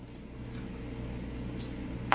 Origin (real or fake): real